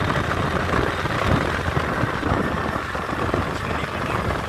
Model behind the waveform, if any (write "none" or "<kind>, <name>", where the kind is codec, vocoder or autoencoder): none